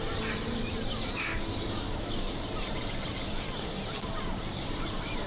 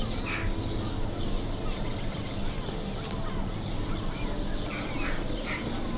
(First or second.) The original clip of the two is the second